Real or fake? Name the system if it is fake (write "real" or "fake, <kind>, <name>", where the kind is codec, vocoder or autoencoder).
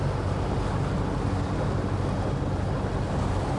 real